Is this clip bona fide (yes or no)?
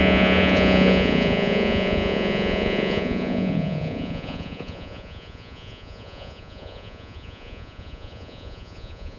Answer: no